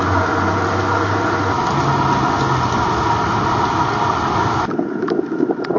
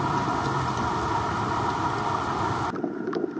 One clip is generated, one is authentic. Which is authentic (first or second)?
first